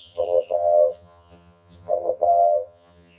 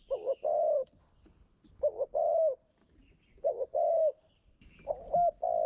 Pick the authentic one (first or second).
second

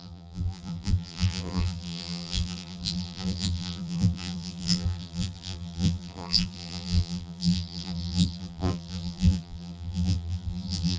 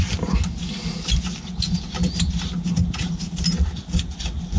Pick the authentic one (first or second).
second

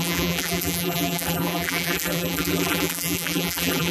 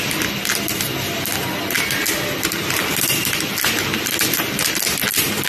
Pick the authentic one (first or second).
second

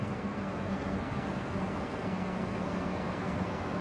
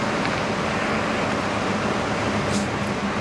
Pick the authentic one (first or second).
second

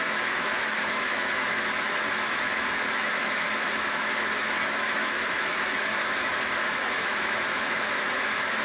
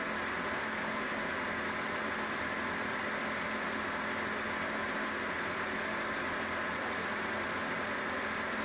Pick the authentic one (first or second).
second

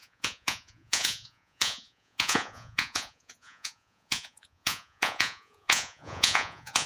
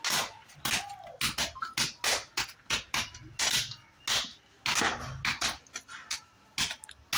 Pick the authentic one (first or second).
second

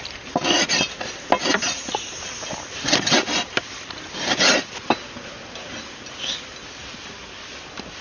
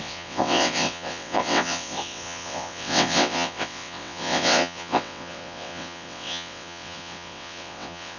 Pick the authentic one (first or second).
first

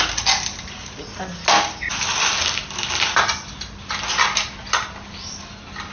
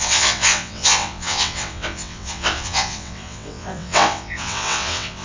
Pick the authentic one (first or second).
first